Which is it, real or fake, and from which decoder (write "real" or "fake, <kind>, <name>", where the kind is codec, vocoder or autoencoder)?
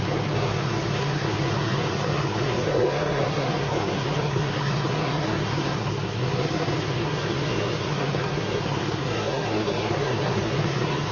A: fake, codec, SNAC